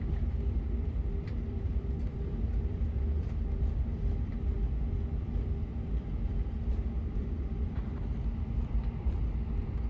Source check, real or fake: fake